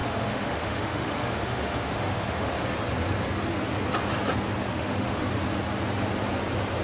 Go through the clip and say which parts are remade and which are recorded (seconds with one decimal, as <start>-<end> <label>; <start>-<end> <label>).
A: 0.0-2.6 remade; 2.6-4.7 recorded; 4.7-5.3 remade; 5.3-6.8 recorded